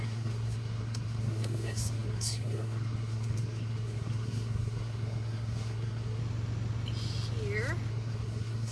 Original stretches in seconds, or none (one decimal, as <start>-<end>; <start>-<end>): 6.2-7.9